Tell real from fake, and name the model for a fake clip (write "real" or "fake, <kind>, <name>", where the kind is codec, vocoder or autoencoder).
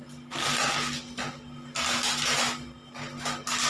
real